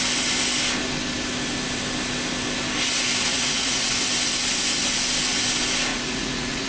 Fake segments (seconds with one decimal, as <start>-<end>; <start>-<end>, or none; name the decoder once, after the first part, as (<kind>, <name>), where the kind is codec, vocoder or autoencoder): 3.3-3.9 (vocoder, Vocos); 5.9-6.7

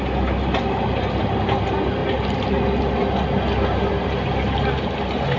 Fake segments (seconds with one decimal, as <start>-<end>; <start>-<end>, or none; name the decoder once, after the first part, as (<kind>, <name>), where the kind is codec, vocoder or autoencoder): none

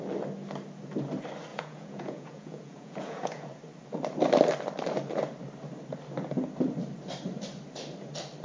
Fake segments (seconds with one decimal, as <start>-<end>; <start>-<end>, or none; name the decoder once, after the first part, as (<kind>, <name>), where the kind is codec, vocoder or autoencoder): 1.5-3.5 (vocoder, Vocos)

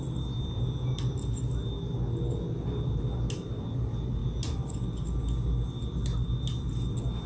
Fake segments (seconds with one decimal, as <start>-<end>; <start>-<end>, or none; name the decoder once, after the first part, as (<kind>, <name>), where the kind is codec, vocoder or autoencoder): none

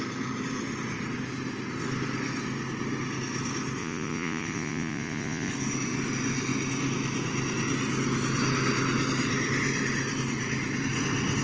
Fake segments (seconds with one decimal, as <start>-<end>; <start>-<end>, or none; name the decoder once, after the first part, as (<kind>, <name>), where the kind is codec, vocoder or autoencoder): 3.8-5.5 (vocoder, Vocos)

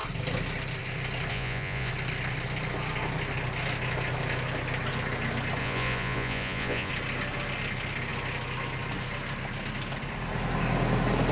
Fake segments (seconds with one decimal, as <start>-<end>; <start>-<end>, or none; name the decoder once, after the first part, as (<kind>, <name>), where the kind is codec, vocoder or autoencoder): 1.3-1.9 (vocoder, Vocos); 5.6-6.9

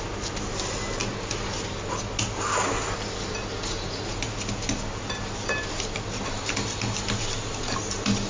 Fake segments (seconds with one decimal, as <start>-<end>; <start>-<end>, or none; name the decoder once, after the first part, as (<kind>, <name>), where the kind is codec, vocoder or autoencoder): none

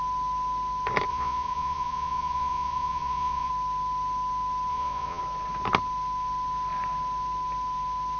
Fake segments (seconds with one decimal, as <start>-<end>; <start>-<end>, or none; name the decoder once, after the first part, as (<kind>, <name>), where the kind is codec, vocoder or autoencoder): 1.1-3.5 (vocoder, Vocos); 4.7-5.2